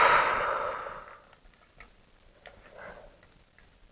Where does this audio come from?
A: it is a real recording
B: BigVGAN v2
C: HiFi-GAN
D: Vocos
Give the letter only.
A